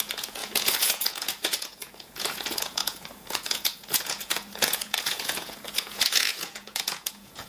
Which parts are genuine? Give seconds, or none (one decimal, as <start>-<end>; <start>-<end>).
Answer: none